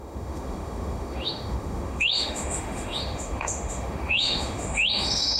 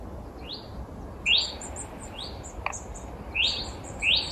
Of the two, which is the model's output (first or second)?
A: first